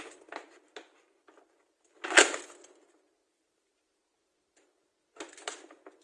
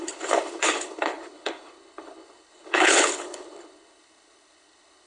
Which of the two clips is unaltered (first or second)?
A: first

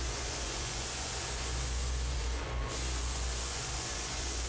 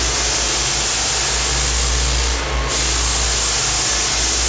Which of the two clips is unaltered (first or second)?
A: second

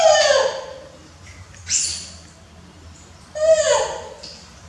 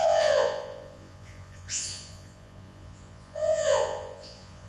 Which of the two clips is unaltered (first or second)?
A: first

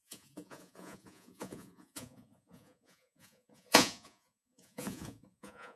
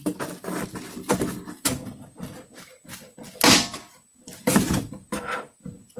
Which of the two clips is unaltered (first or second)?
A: second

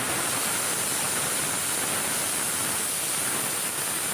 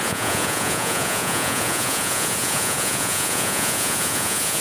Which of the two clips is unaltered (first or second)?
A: first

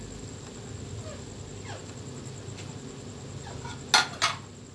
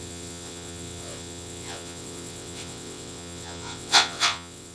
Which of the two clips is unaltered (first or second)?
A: first